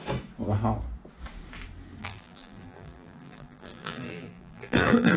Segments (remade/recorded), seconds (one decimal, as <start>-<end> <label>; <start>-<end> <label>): 0.0-2.0 recorded; 2.0-5.2 remade